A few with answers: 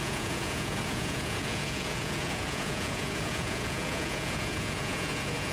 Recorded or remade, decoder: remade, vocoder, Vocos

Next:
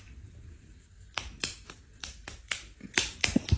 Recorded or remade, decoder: recorded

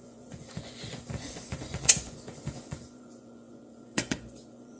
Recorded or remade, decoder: remade, vocoder, Vocos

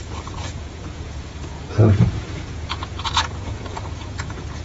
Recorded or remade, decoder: remade, vocoder, Vocos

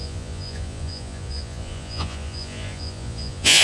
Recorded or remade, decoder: remade, vocoder, Vocos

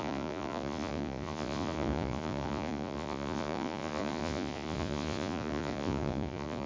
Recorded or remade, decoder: remade, vocoder, Vocos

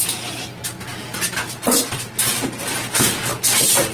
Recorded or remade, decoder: recorded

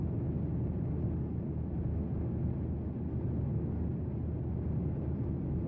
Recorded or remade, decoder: recorded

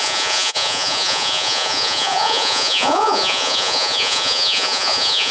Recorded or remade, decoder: remade, vocoder, Vocos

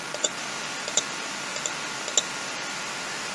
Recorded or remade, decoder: recorded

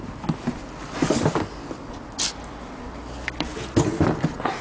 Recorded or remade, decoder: recorded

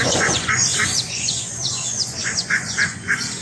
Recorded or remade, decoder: remade, vocoder, Vocos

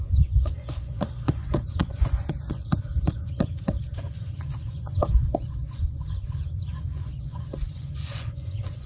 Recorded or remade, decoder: remade, vocoder, Vocos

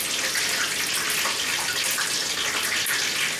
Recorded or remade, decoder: recorded